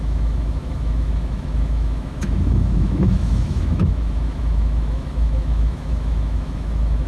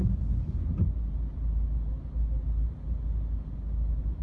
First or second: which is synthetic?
first